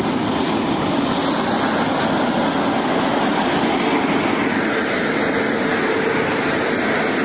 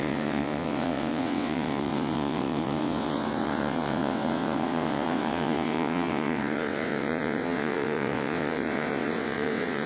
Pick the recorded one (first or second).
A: first